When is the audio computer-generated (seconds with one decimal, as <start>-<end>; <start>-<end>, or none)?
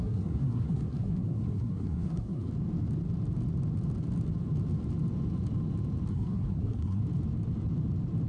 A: 0.0-2.5; 6.1-7.0